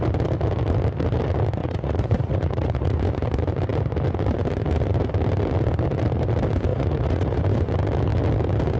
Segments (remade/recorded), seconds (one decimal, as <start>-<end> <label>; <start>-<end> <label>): 0.0-1.6 recorded; 1.6-3.0 remade; 3.0-6.7 recorded; 6.7-7.4 remade; 7.4-8.8 recorded